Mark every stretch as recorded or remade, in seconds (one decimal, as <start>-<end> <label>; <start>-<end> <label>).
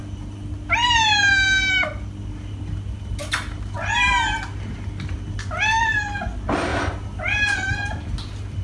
0.0-8.6 recorded